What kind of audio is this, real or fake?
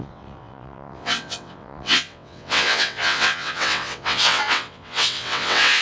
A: fake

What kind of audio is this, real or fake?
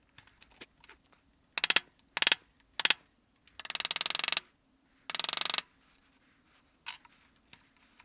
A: real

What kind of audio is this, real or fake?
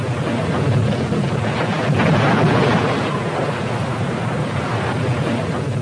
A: real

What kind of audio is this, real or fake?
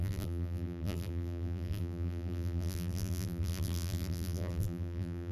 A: fake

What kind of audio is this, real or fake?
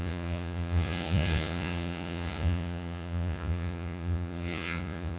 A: fake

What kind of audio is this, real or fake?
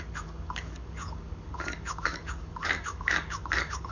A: fake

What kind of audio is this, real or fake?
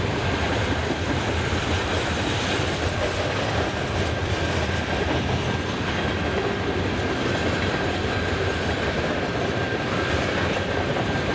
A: fake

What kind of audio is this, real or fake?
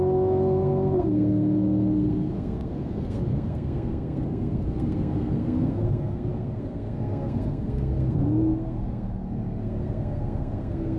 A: fake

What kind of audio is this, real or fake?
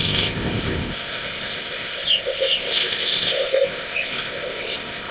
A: fake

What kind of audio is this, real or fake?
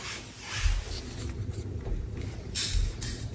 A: real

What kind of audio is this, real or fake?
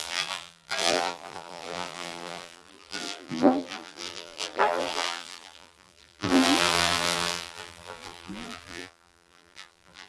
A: fake